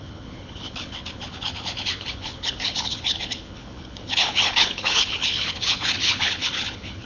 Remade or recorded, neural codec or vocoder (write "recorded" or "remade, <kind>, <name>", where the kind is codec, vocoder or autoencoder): remade, codec, HILCodec